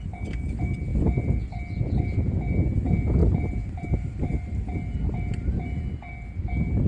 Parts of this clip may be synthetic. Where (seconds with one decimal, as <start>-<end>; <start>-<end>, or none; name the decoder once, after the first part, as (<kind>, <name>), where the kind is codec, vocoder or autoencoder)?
3.2-6.0 (vocoder, BigVGAN v2)